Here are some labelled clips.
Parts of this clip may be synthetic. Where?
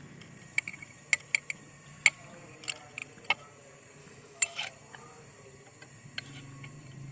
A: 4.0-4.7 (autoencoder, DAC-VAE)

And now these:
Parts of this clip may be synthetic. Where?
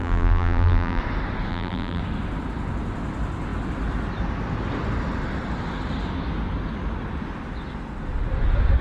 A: 0.0-1.0 (vocoder, BigVGAN v2); 1.5-2.0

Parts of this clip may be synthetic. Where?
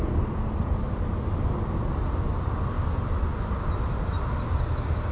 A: none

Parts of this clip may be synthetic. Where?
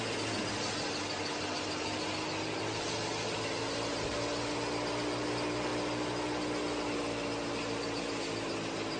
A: none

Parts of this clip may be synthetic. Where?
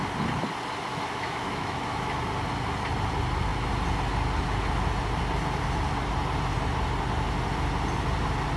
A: 0.9-2.2 (autoencoder, DAC-VAE)